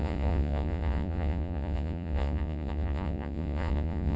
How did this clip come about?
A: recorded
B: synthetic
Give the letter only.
B